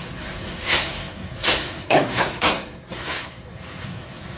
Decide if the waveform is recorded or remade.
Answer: remade